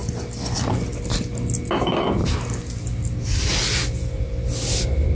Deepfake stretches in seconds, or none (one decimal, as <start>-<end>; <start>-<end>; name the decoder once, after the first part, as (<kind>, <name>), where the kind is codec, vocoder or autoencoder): none